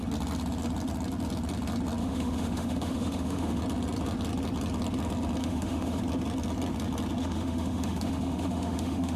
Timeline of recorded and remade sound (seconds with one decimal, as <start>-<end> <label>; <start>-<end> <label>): 0.0-2.0 recorded; 2.0-3.6 remade; 3.6-5.4 recorded; 5.4-6.0 remade; 6.0-7.2 recorded; 7.2-9.2 remade